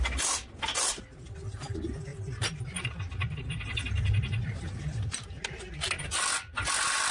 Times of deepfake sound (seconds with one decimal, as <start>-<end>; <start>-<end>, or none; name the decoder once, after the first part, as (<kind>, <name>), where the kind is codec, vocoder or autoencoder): 2.1-3.1 (vocoder, BigVGAN v2)